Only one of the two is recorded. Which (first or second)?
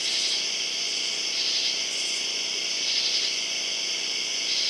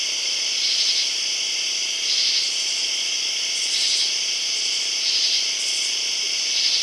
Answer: second